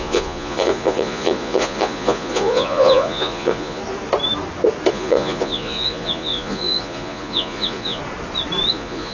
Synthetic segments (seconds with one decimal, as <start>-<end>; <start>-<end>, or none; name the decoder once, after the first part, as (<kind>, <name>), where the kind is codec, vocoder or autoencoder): 0.0-3.8 (vocoder, Vocos); 4.9-8.0; 8.7-9.1